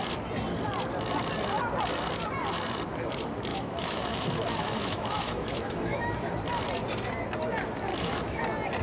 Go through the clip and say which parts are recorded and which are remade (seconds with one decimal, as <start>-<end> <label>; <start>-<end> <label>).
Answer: 0.0-3.5 recorded; 3.5-6.3 remade; 6.3-7.9 recorded; 7.9-8.4 remade; 8.4-8.8 recorded